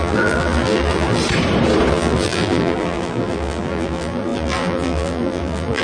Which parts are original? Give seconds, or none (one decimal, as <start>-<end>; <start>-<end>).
1.2-1.9